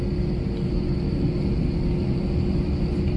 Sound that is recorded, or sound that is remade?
recorded